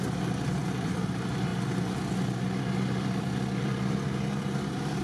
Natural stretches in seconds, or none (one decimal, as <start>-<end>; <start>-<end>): 1.5-2.6